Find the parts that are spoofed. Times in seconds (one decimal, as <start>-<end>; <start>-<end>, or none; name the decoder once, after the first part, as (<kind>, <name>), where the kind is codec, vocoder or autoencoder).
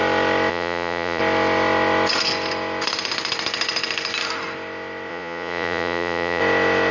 0.5-1.2 (vocoder, Vocos); 5.1-6.4